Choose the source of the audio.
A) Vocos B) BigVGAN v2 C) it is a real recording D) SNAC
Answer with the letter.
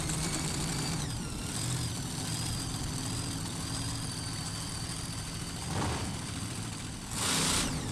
B